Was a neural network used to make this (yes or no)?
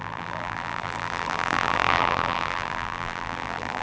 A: yes